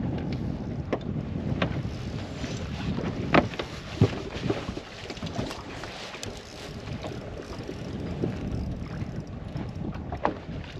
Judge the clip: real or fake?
real